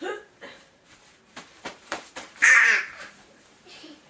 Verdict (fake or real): fake